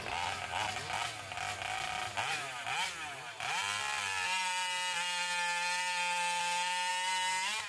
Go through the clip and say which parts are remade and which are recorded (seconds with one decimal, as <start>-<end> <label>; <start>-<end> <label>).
0.0-7.7 recorded